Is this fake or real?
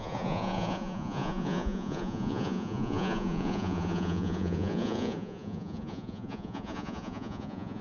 fake